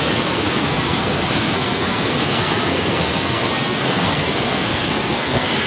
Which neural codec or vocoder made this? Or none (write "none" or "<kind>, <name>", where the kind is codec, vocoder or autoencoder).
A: codec, SNAC